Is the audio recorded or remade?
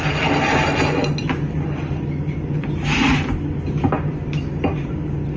recorded